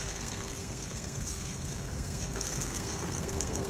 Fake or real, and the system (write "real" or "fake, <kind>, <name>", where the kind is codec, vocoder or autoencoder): fake, codec, SNAC